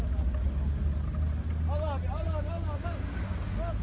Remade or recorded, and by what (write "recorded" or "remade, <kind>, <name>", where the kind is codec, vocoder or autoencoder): recorded